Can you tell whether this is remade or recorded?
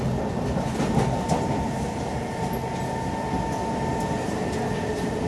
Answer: recorded